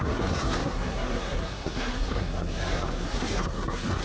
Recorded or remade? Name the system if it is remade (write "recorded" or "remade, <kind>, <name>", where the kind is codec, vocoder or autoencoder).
remade, codec, SNAC